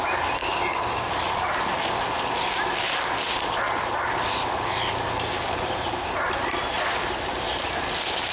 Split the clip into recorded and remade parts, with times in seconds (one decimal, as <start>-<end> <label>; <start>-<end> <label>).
0.0-0.4 recorded; 0.4-1.1 remade; 1.1-8.3 recorded